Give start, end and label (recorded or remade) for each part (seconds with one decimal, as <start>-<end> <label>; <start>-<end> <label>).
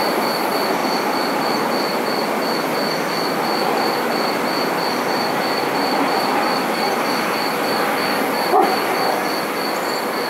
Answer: 0.0-10.3 recorded